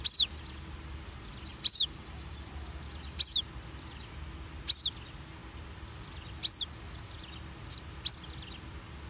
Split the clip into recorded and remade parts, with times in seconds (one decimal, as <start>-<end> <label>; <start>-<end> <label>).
0.0-1.5 recorded; 1.5-2.5 remade; 2.5-9.1 recorded